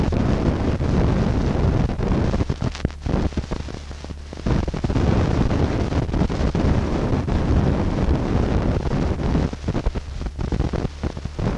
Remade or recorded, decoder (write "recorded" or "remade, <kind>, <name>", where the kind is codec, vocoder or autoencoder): recorded